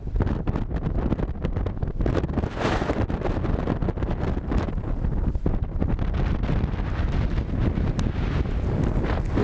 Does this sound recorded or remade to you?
recorded